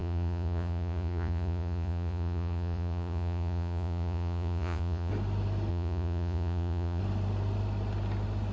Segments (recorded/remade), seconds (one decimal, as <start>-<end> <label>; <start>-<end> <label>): 0.0-5.1 remade; 5.1-5.7 recorded; 5.7-7.0 remade; 7.0-8.5 recorded